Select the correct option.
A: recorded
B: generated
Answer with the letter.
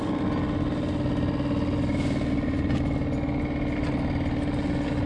A